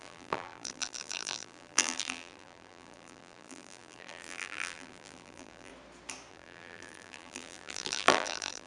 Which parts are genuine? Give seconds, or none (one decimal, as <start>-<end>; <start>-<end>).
5.7-6.3